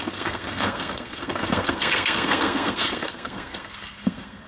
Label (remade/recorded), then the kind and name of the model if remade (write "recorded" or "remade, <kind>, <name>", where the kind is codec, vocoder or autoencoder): remade, codec, SNAC